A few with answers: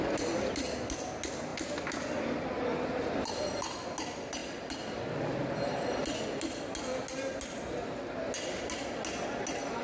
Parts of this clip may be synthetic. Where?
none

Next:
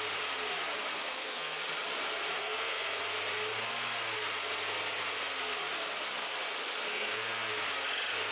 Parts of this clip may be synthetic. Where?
0.9-1.6 (codec, SNAC); 2.4-3.0; 6.9-7.5

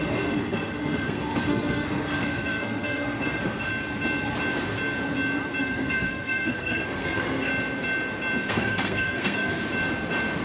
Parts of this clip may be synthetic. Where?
0.0-3.7 (codec, SNAC); 5.6-7.5; 8.5-9.6

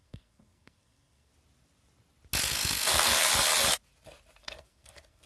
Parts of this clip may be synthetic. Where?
0.0-1.3 (codec, SNAC); 2.4-3.3; 4.4-5.3

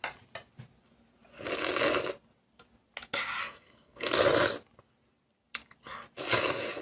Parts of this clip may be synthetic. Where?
3.4-4.1 (codec, SNAC)

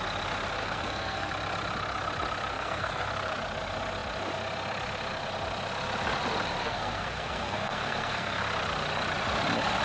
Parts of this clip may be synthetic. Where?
0.6-1.3 (codec, SNAC); 2.5-3.1; 6.6-8.4

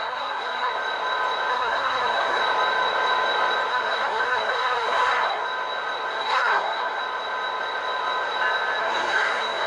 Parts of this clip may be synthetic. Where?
0.0-0.7 (codec, SNAC); 1.5-2.4; 3.7-5.4; 6.1-7.0; 8.8-9.7